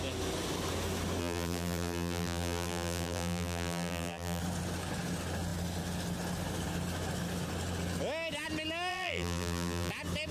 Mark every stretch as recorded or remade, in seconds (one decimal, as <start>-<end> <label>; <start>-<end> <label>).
0.0-1.2 recorded; 1.2-4.4 remade; 4.4-8.9 recorded; 8.9-9.9 remade; 9.9-10.3 recorded